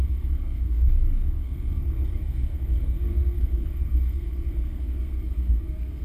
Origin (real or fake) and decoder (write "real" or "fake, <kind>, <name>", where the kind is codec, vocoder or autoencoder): fake, codec, SNAC